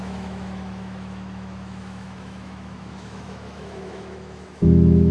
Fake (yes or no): yes